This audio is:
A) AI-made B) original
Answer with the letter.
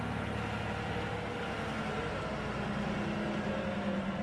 B